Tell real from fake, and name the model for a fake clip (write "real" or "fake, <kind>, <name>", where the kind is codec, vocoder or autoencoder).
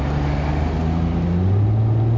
real